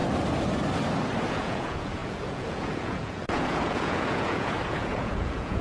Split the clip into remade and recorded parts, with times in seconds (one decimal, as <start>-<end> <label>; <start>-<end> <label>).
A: 0.0-1.3 recorded; 1.3-5.6 remade